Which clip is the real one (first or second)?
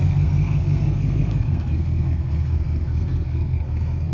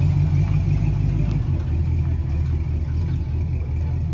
second